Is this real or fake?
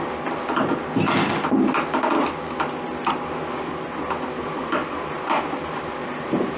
real